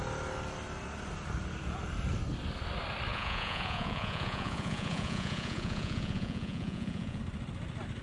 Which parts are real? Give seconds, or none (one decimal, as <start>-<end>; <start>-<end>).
0.0-3.1; 7.2-8.0